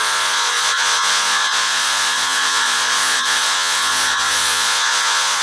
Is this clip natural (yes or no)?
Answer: no